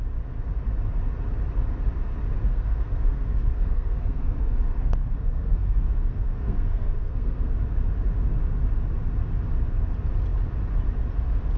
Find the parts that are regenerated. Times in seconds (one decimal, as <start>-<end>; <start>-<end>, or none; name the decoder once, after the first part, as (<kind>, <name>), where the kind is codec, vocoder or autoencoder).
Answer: 2.5-7.5 (codec, SNAC)